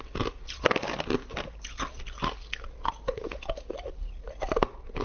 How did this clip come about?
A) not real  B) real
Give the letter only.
B